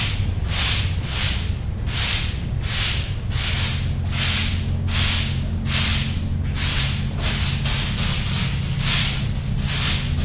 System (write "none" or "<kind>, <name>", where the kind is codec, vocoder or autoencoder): none